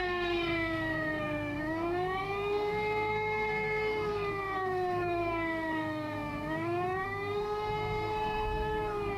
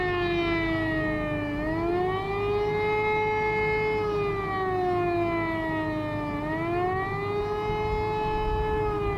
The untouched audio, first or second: second